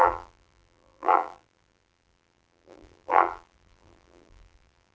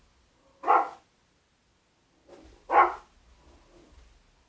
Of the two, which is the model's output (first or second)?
first